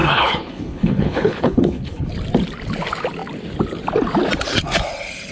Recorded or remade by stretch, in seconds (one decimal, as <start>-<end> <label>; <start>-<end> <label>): 0.0-2.1 remade; 2.1-5.3 recorded